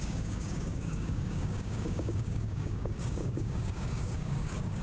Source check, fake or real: fake